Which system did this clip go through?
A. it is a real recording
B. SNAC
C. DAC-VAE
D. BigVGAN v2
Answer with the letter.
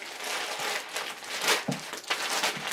A